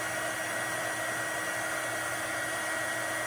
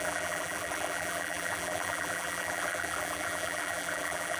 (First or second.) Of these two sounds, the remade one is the second